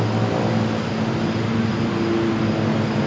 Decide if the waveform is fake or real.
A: real